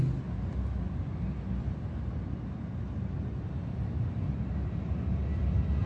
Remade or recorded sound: recorded